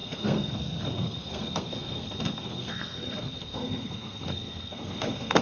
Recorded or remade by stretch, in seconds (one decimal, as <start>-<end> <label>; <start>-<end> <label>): 0.0-5.4 remade